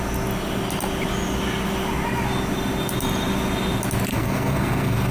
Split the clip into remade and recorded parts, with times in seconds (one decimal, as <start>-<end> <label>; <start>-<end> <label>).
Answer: 0.0-4.1 recorded; 4.1-5.1 remade